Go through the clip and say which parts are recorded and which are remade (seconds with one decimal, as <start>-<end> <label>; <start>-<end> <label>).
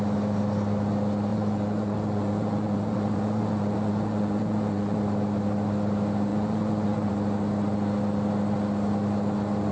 0.0-1.3 recorded; 1.3-5.0 remade; 5.0-6.3 recorded; 6.3-7.1 remade; 7.1-9.7 recorded